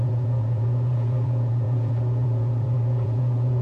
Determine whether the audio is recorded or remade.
remade